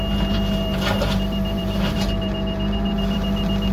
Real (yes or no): no